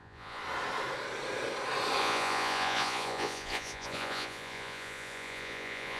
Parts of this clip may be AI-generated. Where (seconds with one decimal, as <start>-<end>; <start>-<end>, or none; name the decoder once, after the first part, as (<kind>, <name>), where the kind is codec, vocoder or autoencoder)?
0.0-0.4 (vocoder, Vocos); 2.0-6.0